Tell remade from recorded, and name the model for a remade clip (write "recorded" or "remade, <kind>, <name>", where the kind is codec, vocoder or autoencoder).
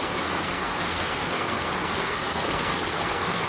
remade, codec, SNAC